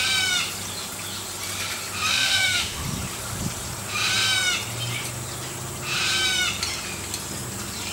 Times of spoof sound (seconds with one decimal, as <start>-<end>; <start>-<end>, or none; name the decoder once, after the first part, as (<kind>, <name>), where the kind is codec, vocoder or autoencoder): 2.1-2.8 (autoencoder, DAC-VAE)